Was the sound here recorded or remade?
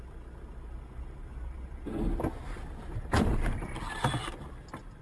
recorded